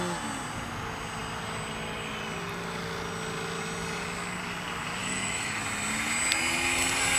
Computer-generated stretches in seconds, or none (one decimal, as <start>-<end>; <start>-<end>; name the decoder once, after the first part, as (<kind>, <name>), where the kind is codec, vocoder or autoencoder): 5.0-5.6 (autoencoder, DAC-VAE)